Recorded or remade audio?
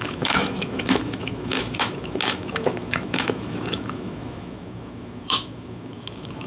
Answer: remade